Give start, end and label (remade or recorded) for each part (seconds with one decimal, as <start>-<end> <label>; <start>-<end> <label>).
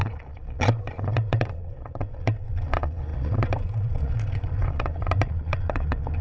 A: 0.0-6.2 remade